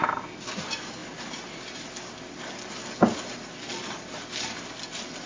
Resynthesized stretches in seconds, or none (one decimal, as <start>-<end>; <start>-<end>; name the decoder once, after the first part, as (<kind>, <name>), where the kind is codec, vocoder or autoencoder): none

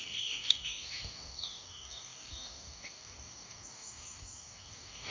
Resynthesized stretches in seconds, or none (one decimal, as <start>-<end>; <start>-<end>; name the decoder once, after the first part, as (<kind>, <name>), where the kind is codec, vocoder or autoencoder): 0.0-5.1 (codec, DAC)

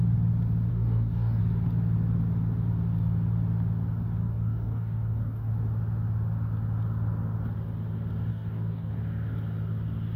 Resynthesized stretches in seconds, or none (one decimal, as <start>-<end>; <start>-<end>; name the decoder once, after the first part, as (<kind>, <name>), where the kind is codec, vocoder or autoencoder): 0.7-1.4 (codec, DAC); 4.2-5.5; 8.3-8.9